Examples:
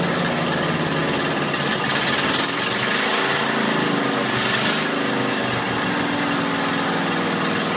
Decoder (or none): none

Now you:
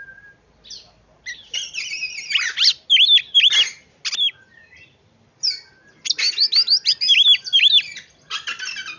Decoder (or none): none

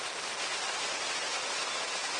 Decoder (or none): none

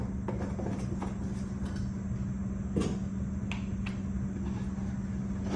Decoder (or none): none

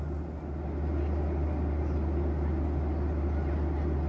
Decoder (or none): none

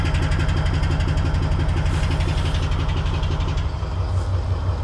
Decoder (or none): none